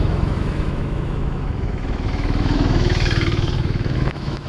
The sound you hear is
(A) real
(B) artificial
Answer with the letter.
B